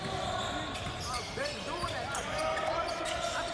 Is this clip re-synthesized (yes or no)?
no